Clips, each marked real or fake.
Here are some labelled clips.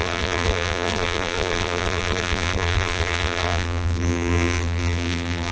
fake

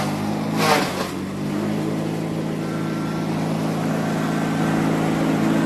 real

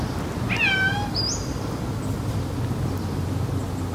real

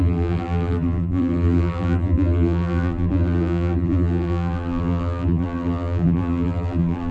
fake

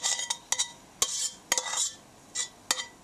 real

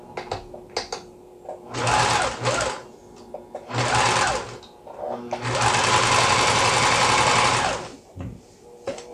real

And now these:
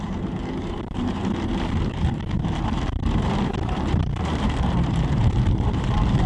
fake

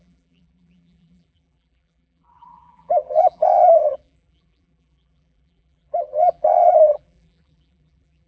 fake